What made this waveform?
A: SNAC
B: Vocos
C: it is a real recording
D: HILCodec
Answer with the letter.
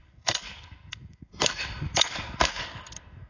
A